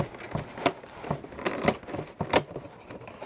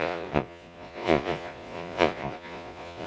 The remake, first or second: second